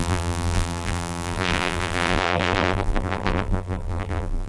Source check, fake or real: fake